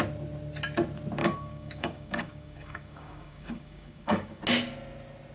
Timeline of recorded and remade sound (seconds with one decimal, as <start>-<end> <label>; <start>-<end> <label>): 0.0-1.2 recorded; 1.2-4.4 remade; 4.4-5.3 recorded